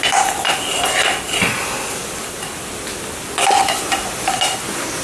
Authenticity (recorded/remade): recorded